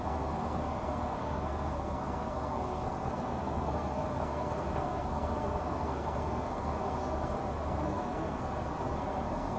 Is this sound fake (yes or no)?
yes